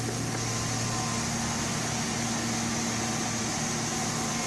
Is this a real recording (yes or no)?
yes